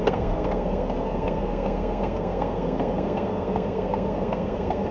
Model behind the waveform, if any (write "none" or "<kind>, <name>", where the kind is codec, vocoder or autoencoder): codec, SNAC